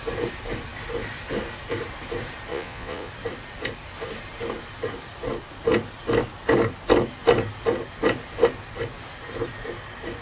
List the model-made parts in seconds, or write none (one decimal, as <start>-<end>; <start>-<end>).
2.5-3.1